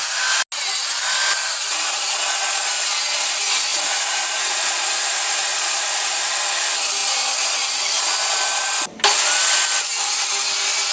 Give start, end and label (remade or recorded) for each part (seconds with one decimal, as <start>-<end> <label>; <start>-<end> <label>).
0.0-3.7 recorded; 3.7-4.8 remade; 4.8-5.5 recorded; 5.5-6.2 remade; 6.2-10.9 recorded